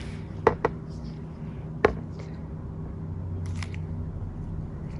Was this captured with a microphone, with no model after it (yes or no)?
yes